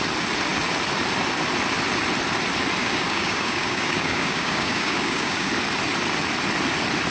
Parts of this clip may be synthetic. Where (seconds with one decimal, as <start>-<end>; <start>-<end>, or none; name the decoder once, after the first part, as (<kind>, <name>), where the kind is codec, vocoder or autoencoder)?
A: 2.8-5.5 (codec, DAC)